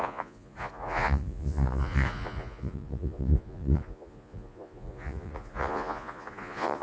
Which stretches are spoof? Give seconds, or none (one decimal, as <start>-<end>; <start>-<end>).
0.0-6.8